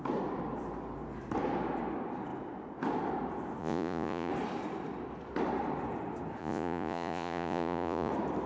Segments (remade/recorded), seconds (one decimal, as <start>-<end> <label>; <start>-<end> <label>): 0.0-3.6 recorded; 3.6-4.3 remade; 4.3-6.4 recorded; 6.4-8.1 remade; 8.1-8.5 recorded